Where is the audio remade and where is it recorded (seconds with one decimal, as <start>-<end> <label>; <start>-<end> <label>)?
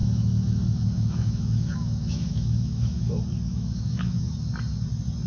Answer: 0.0-3.1 remade; 3.1-3.5 recorded; 3.5-4.3 remade; 4.3-5.3 recorded